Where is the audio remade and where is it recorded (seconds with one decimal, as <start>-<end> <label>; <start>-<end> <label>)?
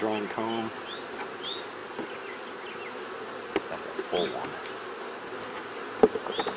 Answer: 0.0-6.6 recorded